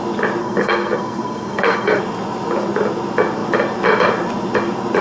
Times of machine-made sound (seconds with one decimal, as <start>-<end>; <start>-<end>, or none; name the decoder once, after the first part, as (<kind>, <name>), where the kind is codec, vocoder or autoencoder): 0.4-2.0 (codec, SNAC)